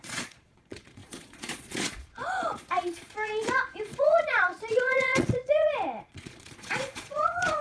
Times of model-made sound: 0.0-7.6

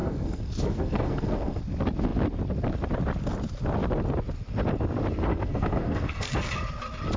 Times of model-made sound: 0.0-1.6; 5.3-6.3

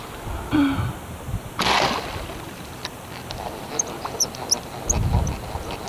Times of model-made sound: 1.3-4.4